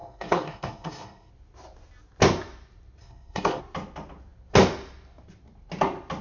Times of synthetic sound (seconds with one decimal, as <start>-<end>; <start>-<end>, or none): 0.0-1.3; 3.0-3.6